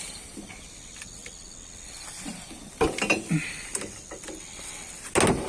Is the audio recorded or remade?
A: recorded